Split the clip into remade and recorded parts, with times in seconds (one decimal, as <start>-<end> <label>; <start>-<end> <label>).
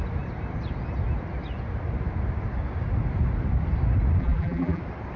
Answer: 0.0-4.2 recorded; 4.2-4.8 remade; 4.8-5.2 recorded